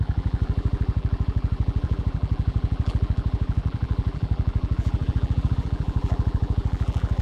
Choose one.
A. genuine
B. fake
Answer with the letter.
B